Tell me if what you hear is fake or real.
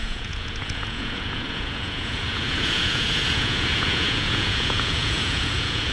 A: fake